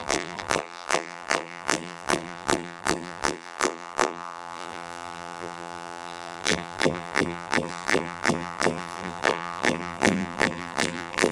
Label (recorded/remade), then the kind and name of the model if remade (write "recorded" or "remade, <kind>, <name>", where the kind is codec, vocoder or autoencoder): remade, vocoder, BigVGAN v2